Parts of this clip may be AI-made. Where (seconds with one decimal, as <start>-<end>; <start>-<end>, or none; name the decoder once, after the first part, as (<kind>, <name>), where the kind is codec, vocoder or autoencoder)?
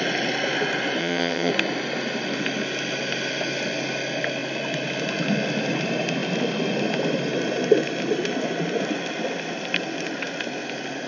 1.0-1.5 (vocoder, HiFi-GAN)